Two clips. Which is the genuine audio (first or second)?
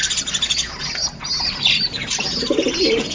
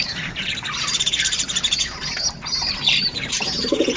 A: first